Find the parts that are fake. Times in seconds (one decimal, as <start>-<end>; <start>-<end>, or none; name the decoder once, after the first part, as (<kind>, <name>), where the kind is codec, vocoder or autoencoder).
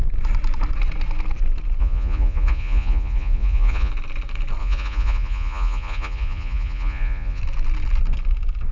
1.8-3.9 (vocoder, Vocos); 4.6-7.4